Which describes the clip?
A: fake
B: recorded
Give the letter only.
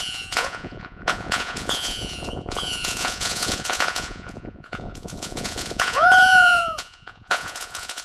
A